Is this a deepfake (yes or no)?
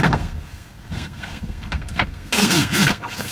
yes